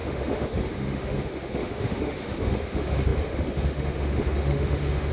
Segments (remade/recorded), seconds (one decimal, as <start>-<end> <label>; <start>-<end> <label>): 0.0-5.1 remade